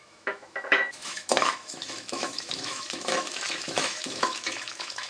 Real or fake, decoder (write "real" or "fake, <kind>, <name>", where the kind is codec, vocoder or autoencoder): fake, autoencoder, DAC-VAE